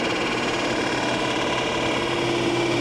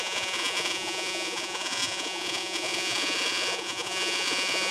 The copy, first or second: second